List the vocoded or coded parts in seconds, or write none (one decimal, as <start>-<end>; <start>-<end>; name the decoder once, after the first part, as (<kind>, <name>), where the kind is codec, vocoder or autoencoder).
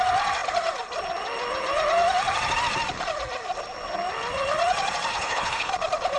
5.1-5.7 (codec, HILCodec)